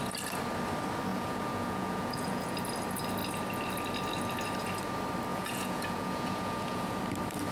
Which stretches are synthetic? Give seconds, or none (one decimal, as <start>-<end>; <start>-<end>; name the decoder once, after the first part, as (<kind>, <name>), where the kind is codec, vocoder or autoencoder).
1.1-2.6 (vocoder, Vocos); 5.3-7.0